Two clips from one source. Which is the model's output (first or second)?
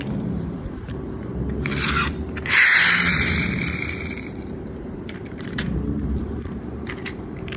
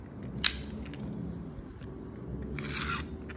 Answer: first